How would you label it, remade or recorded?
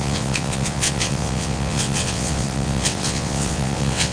remade